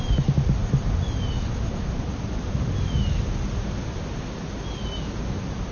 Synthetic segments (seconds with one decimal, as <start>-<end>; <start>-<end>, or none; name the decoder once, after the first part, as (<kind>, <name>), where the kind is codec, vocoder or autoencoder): none